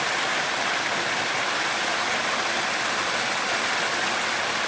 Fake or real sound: real